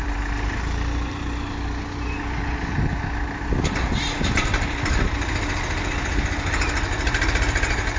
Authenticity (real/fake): real